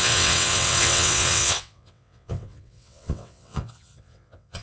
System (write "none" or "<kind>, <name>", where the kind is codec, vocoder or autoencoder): vocoder, WaveNeXt